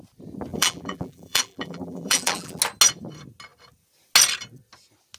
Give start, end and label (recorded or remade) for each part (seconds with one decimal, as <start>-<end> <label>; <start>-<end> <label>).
0.0-0.5 recorded; 0.5-2.6 remade; 2.6-5.2 recorded